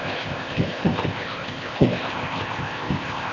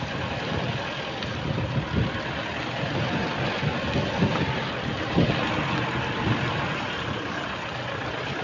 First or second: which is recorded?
second